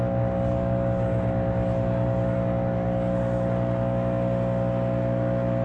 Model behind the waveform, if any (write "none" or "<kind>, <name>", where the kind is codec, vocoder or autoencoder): none